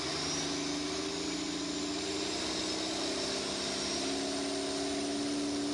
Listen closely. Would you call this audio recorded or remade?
recorded